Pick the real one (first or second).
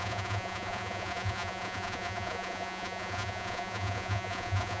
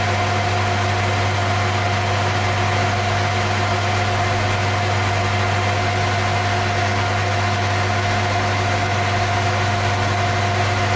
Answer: second